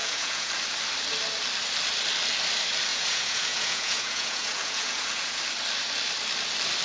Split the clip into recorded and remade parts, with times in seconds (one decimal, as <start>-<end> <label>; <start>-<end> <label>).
0.0-0.5 remade; 0.5-2.9 recorded; 2.9-5.4 remade; 5.4-6.8 recorded